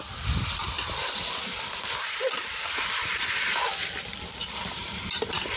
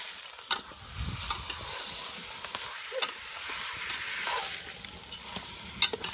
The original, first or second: second